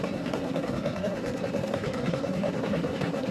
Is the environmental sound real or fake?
fake